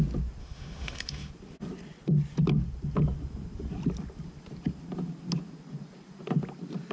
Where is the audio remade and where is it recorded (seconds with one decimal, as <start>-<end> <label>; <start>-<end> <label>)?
0.0-0.4 recorded; 0.4-1.3 remade; 1.3-6.9 recorded